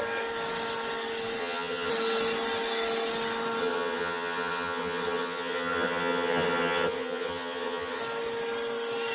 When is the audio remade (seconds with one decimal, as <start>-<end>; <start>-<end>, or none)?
1.4-1.9; 3.6-8.0